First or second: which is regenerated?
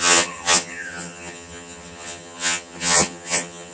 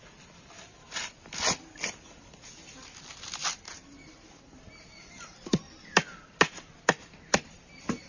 first